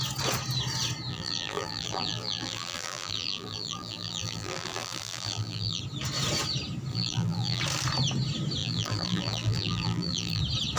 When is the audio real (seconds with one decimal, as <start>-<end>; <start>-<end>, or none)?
0.0-1.1; 5.8-6.9; 7.6-8.6; 10.4-10.8